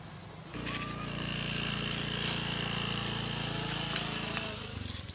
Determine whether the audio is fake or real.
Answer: real